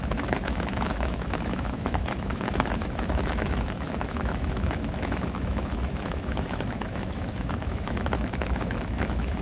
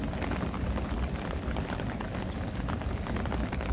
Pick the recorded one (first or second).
second